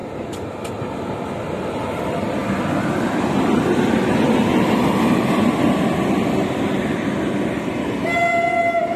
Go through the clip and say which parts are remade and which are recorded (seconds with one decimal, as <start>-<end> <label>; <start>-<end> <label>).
0.0-9.0 recorded